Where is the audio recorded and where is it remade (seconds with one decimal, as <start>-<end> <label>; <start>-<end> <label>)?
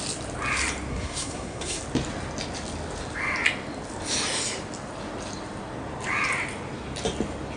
0.0-0.9 recorded; 0.9-1.8 remade; 1.8-7.6 recorded